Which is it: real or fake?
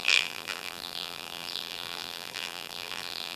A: fake